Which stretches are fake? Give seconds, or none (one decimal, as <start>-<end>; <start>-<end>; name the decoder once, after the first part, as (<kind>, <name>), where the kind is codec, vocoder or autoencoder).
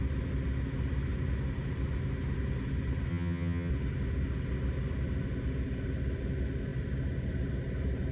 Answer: 3.1-3.7 (vocoder, HiFi-GAN)